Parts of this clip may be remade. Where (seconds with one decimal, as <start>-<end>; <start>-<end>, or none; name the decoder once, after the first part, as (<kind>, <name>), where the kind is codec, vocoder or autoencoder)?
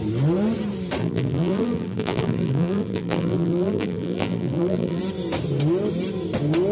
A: 1.0-5.0 (vocoder, BigVGAN v2)